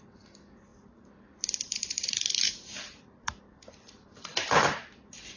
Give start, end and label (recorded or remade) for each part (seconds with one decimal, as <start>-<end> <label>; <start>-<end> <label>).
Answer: 0.0-5.4 recorded